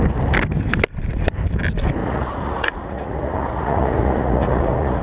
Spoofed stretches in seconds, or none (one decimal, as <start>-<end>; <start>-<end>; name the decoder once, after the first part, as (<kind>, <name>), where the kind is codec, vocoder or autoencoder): 2.0-5.0 (vocoder, Vocos)